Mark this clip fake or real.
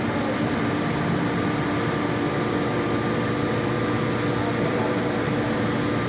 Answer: real